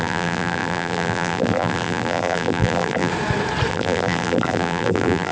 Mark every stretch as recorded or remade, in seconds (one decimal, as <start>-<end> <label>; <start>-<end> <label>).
0.0-3.1 remade; 3.1-3.7 recorded; 3.7-5.3 remade